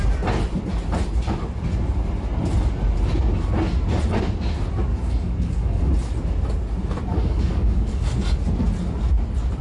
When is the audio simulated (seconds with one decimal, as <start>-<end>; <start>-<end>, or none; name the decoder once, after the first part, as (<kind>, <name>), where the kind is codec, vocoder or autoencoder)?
4.9-5.9 (codec, DAC); 7.1-8.1